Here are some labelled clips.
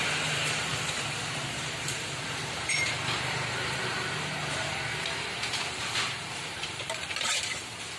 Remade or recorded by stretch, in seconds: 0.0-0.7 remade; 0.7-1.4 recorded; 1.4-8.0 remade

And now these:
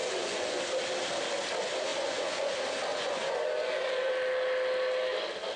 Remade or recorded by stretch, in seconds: 0.0-0.6 remade; 0.6-1.9 recorded; 1.9-2.5 remade; 2.5-2.9 recorded; 2.9-4.1 remade; 4.1-5.6 recorded